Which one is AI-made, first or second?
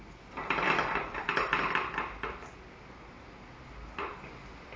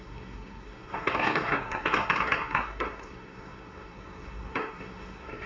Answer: second